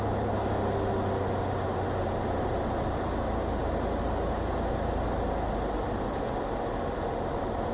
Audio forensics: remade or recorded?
recorded